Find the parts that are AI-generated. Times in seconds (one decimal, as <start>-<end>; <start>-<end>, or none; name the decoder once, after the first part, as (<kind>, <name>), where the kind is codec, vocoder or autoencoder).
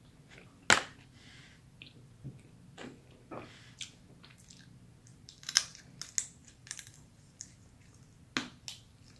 5.1-5.8 (vocoder, BigVGAN v2); 6.4-7.3